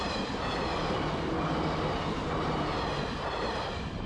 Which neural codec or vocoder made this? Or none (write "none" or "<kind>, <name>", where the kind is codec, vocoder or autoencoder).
none